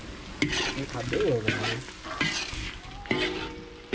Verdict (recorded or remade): recorded